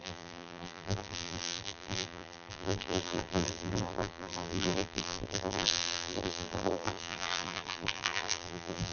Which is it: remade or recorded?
remade